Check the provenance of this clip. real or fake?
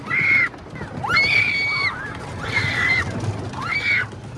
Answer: real